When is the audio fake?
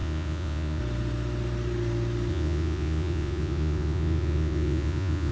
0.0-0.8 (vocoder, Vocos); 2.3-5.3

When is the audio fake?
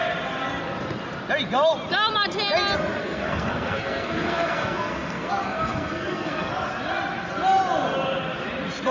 3.0-6.5 (codec, SNAC)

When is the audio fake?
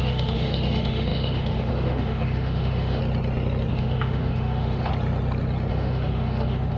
0.0-3.0 (autoencoder, DAC-VAE); 3.7-4.9; 5.7-6.8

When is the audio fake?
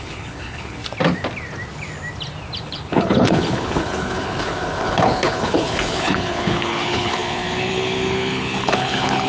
0.0-0.8 (codec, HILCodec); 2.6-9.3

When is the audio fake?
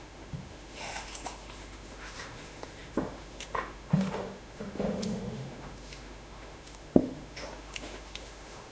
0.0-8.7 (autoencoder, DAC-VAE)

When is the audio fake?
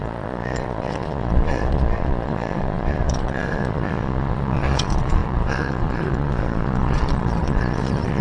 0.0-8.2 (vocoder, Vocos)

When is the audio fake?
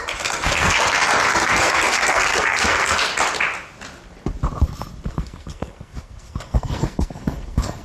0.0-3.1 (codec, SNAC); 5.1-7.8